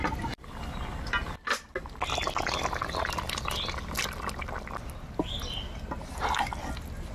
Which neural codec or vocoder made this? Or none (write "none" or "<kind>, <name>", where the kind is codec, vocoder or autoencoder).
none